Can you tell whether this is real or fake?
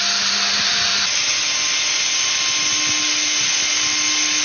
real